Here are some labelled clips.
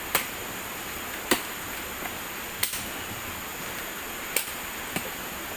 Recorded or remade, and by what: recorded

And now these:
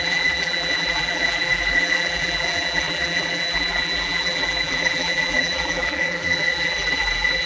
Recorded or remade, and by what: remade, vocoder, BigVGAN v2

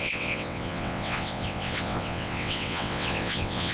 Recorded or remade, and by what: remade, vocoder, WaveNeXt